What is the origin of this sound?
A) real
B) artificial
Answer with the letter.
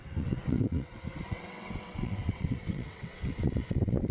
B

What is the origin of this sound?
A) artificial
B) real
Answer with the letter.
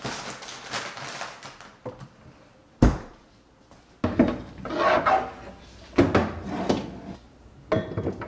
B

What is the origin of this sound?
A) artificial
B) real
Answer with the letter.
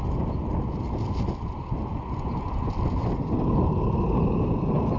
B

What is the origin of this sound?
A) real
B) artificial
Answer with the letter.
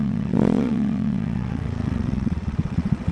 B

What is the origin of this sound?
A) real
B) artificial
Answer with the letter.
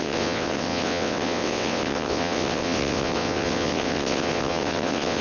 B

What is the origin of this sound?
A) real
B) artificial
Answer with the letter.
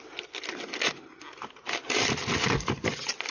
A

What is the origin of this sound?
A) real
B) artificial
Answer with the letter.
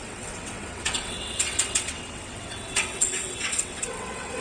B